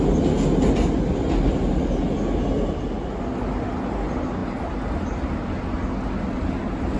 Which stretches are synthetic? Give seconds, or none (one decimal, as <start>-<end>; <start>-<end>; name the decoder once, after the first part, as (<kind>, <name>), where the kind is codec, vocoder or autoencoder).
none